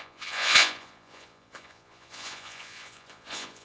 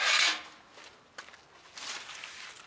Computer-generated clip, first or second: first